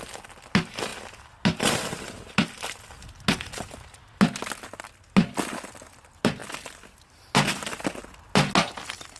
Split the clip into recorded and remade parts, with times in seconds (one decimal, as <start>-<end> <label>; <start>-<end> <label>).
0.0-9.2 recorded